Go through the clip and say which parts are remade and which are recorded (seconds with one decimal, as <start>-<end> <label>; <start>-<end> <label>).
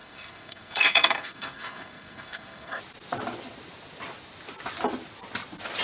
0.0-2.8 remade; 2.8-5.8 recorded